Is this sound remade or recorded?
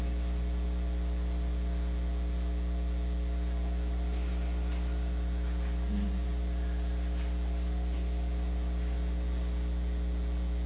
recorded